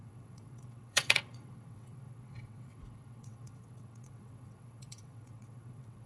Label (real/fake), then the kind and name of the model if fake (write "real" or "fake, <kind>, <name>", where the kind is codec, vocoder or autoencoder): fake, vocoder, WaveNeXt